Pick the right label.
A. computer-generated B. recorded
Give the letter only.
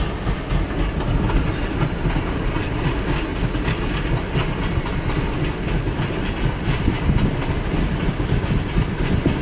B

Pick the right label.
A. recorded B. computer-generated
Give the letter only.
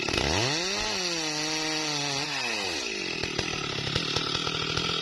A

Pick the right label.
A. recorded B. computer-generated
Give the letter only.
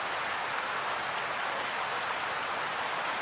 A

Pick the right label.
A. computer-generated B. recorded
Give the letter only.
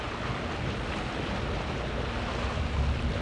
B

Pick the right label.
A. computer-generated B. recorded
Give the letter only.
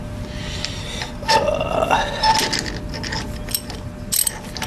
B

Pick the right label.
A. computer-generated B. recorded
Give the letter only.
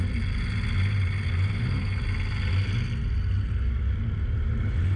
B